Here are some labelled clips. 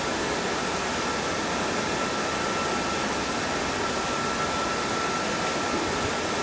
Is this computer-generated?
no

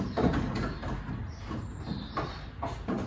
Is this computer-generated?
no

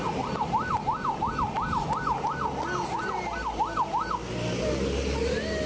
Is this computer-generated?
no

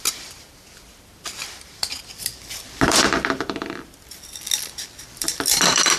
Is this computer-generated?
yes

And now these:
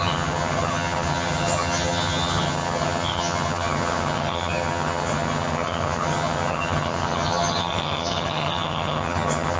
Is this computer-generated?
yes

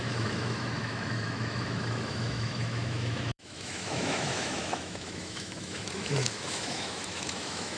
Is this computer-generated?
yes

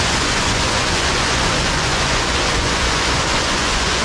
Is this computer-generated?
yes